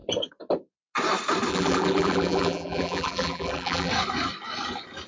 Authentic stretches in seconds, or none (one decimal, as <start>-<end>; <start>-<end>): 0.0-1.5; 3.9-5.1